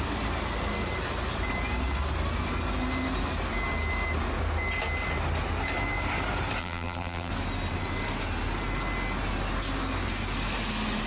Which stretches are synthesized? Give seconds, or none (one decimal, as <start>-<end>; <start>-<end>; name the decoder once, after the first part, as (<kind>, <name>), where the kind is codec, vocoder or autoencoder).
6.6-7.3 (vocoder, BigVGAN v2)